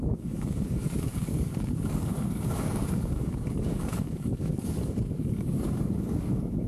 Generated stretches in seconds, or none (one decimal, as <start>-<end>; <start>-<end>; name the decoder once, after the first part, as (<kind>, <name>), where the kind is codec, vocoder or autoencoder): 0.0-6.7 (codec, DAC)